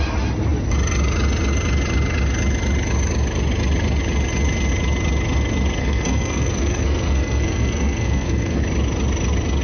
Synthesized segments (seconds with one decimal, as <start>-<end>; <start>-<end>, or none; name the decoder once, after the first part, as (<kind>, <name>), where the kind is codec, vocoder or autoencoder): 5.8-8.6 (codec, SNAC)